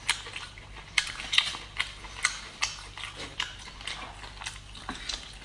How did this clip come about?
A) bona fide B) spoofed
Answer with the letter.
A